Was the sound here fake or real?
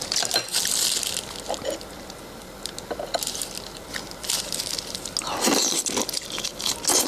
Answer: real